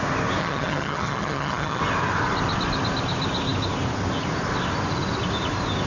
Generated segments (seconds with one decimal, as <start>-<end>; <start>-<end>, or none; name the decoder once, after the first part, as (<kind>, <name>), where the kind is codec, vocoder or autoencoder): 0.4-1.8 (vocoder, HiFi-GAN)